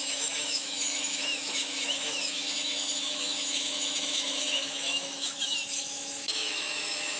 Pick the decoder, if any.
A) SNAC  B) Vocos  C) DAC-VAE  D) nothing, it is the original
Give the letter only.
C